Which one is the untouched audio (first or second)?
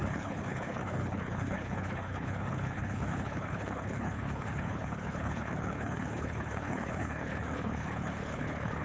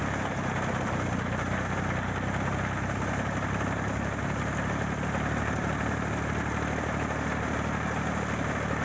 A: second